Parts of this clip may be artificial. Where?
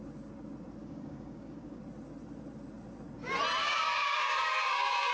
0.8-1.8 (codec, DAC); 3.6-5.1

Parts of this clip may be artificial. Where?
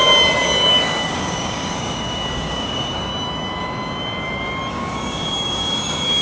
0.8-3.1 (codec, DAC); 4.7-6.2